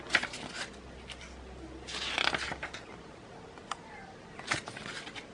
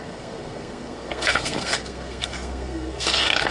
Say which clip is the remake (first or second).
second